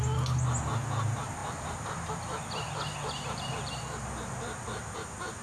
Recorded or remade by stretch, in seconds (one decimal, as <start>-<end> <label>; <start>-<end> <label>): 0.0-3.0 recorded; 3.0-4.4 remade; 4.4-5.4 recorded